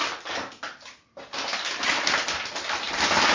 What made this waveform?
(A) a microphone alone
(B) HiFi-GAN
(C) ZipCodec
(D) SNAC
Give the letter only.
A